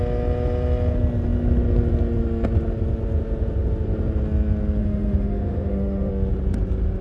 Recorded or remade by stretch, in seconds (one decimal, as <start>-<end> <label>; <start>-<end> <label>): 0.0-4.8 recorded; 4.8-6.1 remade; 6.1-7.0 recorded